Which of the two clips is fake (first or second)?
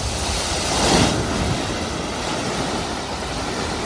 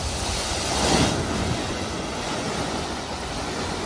second